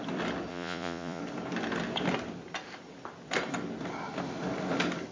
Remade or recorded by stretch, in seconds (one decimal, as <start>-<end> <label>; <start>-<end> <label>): 0.0-0.5 recorded; 0.5-1.2 remade; 1.2-5.1 recorded